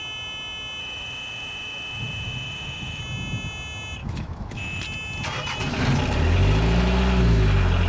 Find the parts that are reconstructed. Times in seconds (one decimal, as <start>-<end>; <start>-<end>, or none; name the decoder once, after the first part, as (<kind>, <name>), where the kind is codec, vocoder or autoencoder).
0.8-3.0 (autoencoder, DAC-VAE); 4.0-4.8